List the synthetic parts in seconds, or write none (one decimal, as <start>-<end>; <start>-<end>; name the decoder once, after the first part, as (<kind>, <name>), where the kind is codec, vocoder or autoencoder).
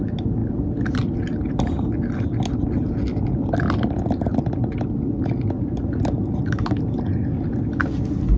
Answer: none